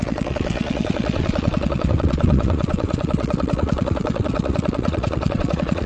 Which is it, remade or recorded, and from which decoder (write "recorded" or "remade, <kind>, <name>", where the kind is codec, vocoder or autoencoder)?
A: remade, vocoder, WaveNeXt